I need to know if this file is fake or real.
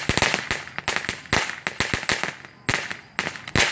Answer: real